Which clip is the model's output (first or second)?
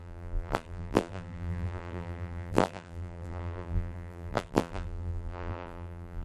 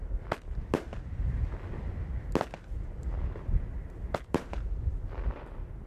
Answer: first